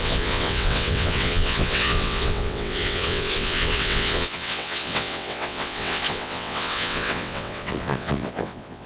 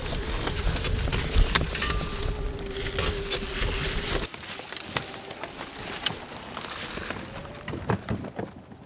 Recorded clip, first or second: second